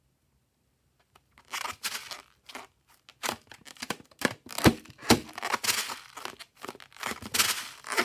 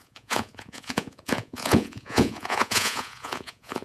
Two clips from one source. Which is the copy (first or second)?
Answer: second